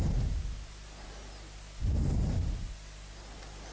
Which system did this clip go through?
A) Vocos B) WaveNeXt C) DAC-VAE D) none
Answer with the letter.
D